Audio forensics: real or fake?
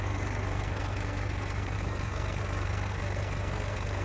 fake